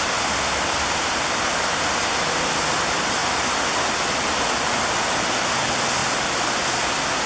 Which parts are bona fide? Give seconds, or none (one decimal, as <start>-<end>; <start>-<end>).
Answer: 0.0-7.3